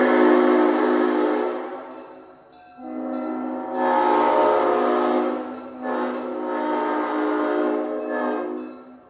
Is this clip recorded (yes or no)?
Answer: yes